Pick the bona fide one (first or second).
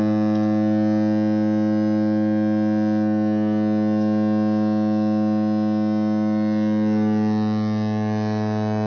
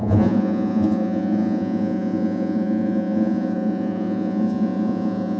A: first